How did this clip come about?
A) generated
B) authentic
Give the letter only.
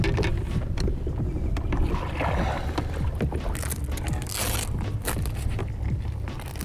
B